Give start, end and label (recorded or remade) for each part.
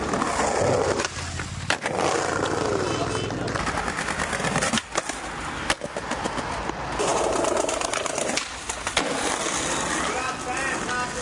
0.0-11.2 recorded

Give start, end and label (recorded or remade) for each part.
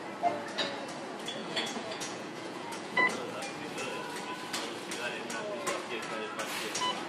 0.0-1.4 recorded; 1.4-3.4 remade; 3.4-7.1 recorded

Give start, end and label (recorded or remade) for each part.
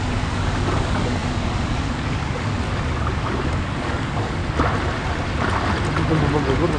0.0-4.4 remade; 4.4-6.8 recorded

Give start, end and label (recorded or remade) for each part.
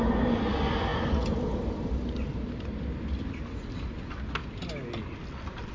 0.0-5.7 recorded